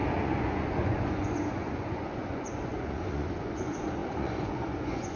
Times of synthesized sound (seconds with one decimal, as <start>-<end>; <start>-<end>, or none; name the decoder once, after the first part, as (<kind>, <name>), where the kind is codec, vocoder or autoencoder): 0.0-5.2 (vocoder, Vocos)